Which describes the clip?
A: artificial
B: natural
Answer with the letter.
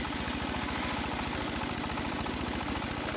B